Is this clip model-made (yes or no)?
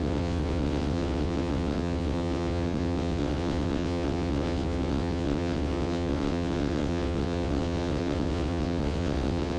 yes